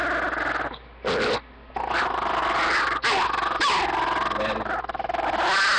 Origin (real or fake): real